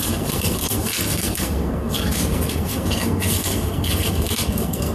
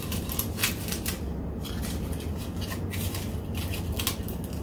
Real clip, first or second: second